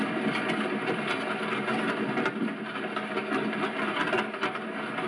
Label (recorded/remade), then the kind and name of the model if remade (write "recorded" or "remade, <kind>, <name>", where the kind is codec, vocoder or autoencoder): recorded